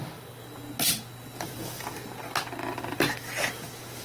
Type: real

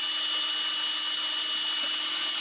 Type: real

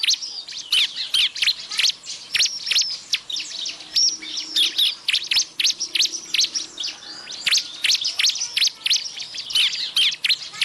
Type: real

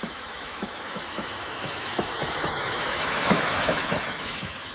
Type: fake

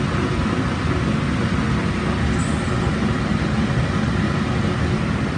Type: real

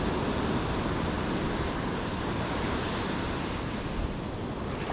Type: real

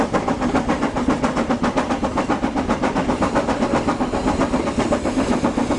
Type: real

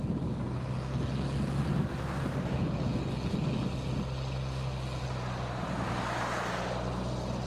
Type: real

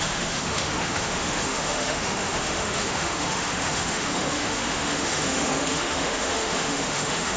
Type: fake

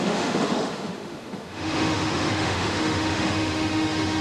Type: fake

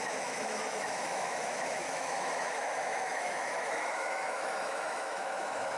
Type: fake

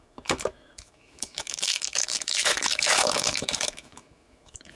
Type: fake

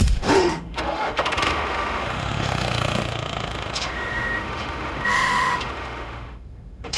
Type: fake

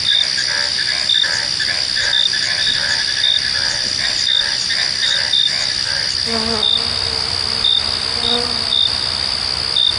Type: real